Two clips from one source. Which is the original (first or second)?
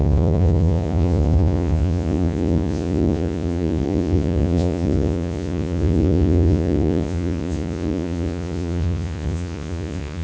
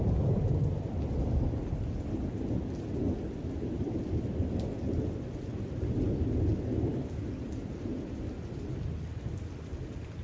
second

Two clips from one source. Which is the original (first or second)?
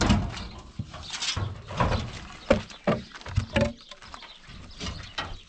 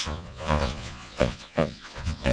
first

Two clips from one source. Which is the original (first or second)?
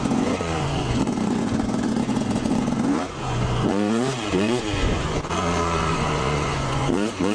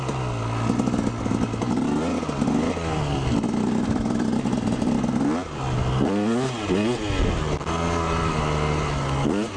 second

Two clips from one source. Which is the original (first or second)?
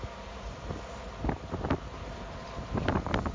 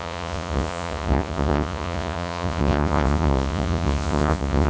first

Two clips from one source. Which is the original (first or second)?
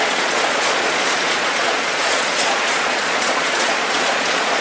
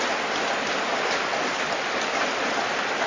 second